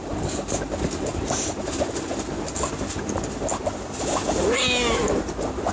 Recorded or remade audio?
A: recorded